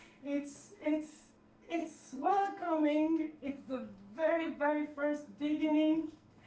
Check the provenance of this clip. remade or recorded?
remade